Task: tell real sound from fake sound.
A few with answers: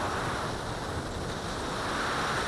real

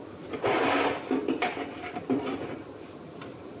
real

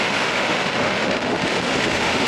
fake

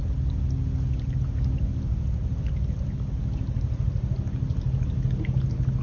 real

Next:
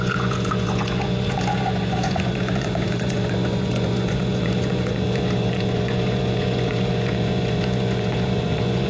fake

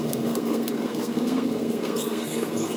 fake